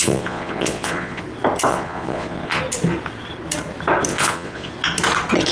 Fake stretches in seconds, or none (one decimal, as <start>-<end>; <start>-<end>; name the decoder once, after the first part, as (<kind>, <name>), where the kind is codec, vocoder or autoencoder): 0.0-1.2 (vocoder, Vocos); 1.7-2.6; 4.1-4.7